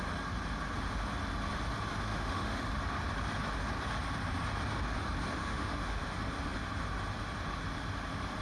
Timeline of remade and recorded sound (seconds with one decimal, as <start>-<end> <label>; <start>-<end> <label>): 0.0-2.1 recorded; 2.1-2.7 remade; 2.7-5.4 recorded; 5.4-6.0 remade; 6.0-8.4 recorded